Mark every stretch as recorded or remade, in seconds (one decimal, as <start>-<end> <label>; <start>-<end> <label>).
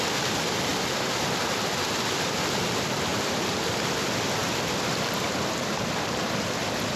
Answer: 0.0-0.7 recorded; 0.7-1.2 remade; 1.2-3.1 recorded; 3.1-3.8 remade; 3.8-4.4 recorded; 4.4-5.3 remade; 5.3-7.0 recorded